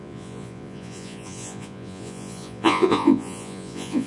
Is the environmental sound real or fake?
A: fake